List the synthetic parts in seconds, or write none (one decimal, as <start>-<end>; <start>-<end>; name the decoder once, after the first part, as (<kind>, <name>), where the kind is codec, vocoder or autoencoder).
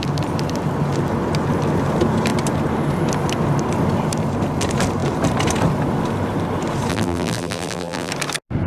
6.9-8.1 (vocoder, BigVGAN v2)